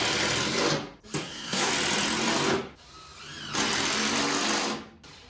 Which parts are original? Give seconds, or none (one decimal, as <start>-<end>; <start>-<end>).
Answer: 0.0-1.2; 1.7-5.3